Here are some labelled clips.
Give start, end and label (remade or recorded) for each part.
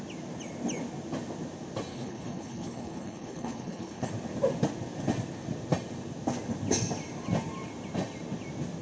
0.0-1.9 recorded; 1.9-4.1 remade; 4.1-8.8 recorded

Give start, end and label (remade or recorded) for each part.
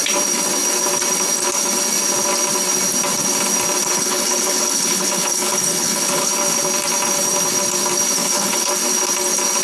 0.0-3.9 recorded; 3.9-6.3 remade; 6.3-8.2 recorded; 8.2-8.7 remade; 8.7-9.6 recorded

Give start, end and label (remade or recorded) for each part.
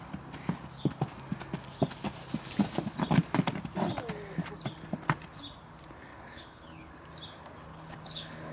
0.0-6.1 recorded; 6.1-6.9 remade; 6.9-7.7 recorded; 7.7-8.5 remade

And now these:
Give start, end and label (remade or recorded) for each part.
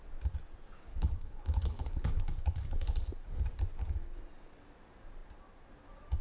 0.0-0.9 recorded; 0.9-2.2 remade; 2.2-3.7 recorded; 3.7-4.2 remade; 4.2-6.2 recorded